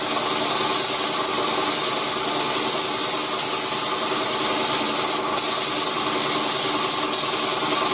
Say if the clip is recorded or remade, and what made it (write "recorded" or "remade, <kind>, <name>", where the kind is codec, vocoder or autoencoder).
recorded